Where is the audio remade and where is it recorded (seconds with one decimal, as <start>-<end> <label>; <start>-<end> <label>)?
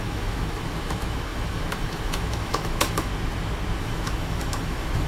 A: 0.0-3.1 remade; 3.1-3.8 recorded; 3.8-5.1 remade